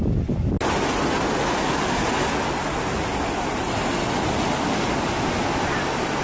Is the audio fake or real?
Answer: real